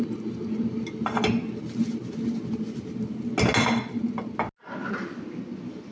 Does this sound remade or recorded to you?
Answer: recorded